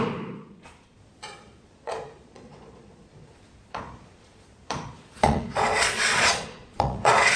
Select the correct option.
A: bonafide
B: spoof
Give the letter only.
B